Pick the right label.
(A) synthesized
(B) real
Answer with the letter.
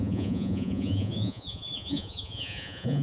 A